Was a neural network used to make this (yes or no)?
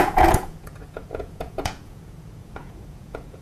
yes